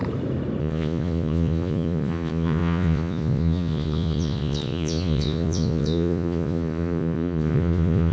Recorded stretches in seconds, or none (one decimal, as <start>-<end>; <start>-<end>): 0.0-0.6